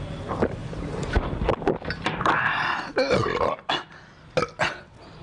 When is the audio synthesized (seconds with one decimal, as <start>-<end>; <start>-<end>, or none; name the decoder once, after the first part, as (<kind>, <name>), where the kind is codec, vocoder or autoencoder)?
0.6-3.7 (vocoder, BigVGAN v2)